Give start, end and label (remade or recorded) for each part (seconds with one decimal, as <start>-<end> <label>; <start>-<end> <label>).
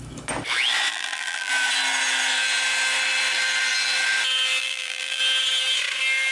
0.0-0.9 recorded; 0.9-1.5 remade; 1.5-4.6 recorded; 4.6-5.2 remade; 5.2-6.3 recorded